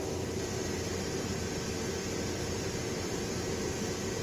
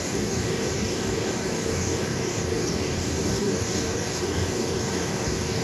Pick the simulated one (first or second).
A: second